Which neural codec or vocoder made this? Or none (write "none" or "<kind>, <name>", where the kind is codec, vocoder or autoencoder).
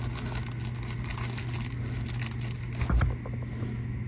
none